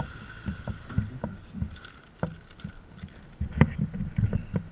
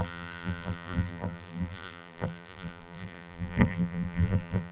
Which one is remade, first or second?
second